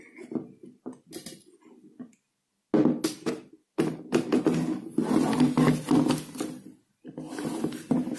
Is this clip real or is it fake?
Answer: real